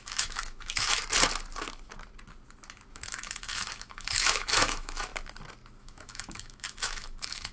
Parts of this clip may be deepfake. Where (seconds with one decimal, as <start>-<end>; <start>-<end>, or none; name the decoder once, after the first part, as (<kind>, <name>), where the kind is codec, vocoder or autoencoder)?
0.0-1.0 (autoencoder, DAC-VAE); 2.9-5.1; 5.8-7.5